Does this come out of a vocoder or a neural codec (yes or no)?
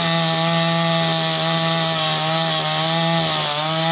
no